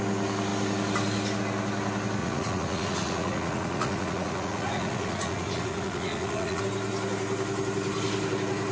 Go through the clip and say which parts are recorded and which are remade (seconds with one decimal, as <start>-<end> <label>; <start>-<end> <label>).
0.0-2.2 recorded; 2.2-6.6 remade; 6.6-8.7 recorded